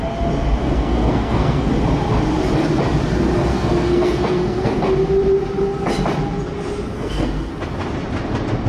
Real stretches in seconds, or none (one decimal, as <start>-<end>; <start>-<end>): 0.0-0.6; 1.7-3.5; 4.8-6.9; 7.5-8.7